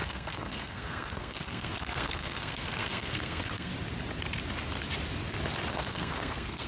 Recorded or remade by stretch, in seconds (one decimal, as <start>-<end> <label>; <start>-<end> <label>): 0.0-3.7 remade; 3.7-5.7 recorded; 5.7-6.7 remade